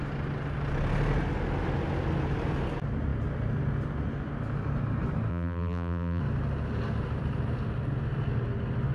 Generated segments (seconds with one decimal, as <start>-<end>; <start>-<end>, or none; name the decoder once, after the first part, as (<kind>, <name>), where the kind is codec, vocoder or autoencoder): 5.3-6.2 (vocoder, BigVGAN v2)